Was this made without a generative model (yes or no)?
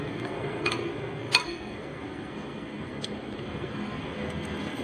no